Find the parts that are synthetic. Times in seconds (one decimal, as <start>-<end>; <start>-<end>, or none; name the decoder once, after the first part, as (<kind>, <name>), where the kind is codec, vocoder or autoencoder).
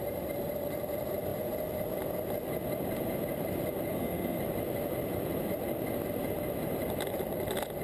3.9-4.4 (codec, SNAC)